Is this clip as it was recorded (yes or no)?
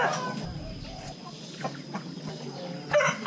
yes